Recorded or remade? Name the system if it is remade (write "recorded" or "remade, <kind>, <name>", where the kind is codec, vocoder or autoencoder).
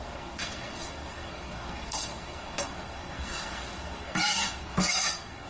remade, codec, SNAC